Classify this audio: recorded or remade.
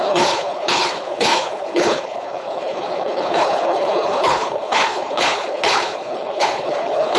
remade